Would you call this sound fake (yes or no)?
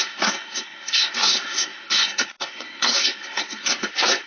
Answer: yes